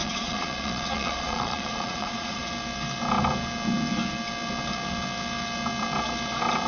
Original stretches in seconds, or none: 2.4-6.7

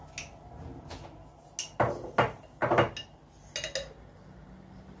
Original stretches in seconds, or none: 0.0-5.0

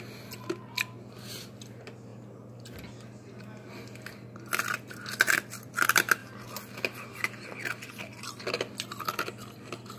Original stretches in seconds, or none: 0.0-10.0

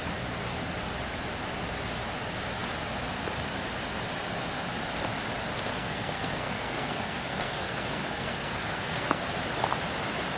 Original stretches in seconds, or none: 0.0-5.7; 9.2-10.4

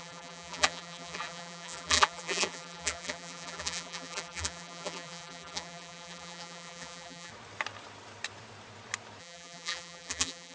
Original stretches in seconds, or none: 7.3-9.2